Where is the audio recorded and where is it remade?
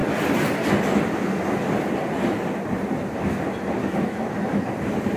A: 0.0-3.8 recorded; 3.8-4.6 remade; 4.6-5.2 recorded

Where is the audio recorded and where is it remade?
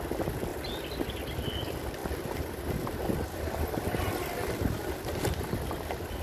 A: 0.0-6.2 recorded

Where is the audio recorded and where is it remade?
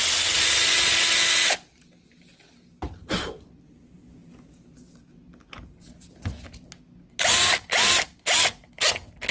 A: 0.0-9.3 recorded